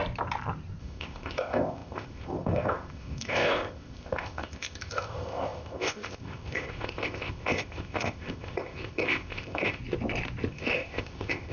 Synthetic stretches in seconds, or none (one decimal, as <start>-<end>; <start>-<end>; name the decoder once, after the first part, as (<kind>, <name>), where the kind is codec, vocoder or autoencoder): 0.8-9.8 (codec, ZipCodec); 10.5-11.5